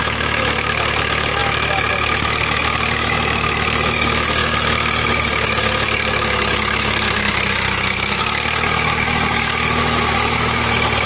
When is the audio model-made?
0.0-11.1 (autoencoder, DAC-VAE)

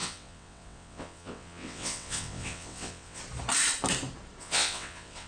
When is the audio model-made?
0.0-3.2 (vocoder, WaveNeXt); 4.4-5.3

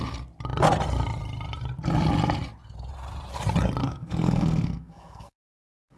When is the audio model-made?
3.8-6.0 (codec, SNAC)

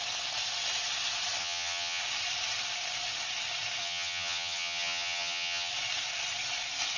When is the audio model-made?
1.4-2.0 (vocoder, HiFi-GAN); 3.8-5.7

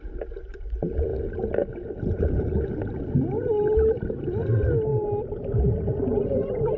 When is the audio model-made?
none

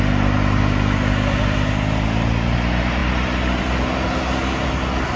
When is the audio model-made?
none

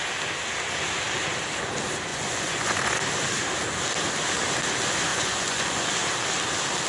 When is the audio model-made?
2.1-3.0 (vocoder, Vocos); 5.1-5.9